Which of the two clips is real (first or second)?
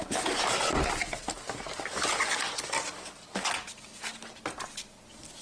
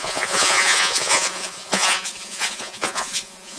first